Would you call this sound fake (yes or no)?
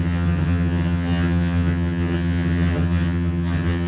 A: yes